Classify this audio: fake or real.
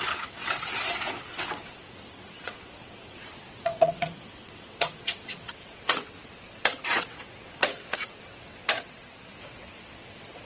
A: fake